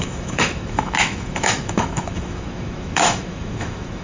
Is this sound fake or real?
fake